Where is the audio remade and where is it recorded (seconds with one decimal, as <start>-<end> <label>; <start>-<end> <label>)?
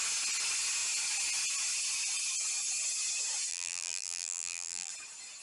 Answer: 0.0-3.5 recorded; 3.5-4.9 remade; 4.9-5.4 recorded